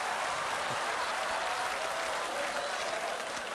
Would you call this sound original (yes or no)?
yes